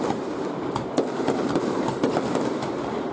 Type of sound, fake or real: real